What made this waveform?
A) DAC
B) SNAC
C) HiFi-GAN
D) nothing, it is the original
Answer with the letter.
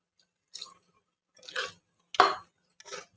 D